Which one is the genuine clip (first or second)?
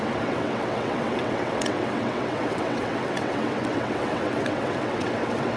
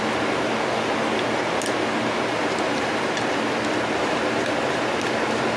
second